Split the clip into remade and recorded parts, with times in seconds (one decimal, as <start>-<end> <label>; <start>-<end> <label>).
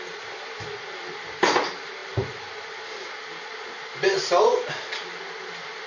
0.0-5.9 recorded